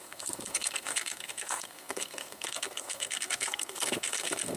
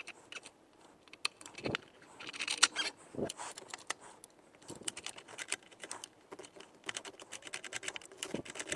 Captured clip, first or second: second